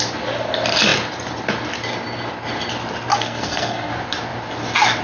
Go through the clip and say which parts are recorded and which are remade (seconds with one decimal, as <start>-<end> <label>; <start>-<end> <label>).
0.0-3.1 recorded; 3.1-3.9 remade; 3.9-5.0 recorded